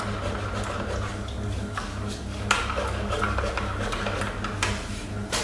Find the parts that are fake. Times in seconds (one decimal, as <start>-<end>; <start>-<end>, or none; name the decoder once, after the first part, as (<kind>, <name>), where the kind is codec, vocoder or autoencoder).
1.1-4.2 (codec, DAC)